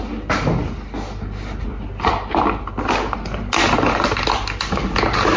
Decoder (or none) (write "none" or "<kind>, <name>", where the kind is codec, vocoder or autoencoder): none